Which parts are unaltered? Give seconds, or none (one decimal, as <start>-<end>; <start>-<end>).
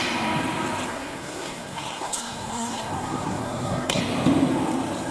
0.0-0.9; 4.0-5.1